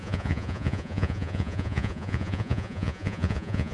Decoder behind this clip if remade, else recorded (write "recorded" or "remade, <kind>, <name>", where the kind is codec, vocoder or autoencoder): remade, vocoder, Vocos